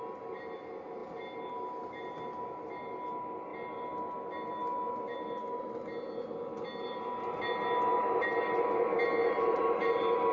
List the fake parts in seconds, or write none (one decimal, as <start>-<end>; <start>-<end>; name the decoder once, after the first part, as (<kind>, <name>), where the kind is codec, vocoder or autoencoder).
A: 9.2-9.9 (vocoder, BigVGAN v2)